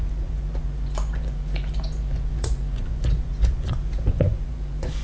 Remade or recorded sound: remade